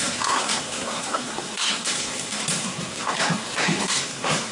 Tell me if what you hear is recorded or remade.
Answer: remade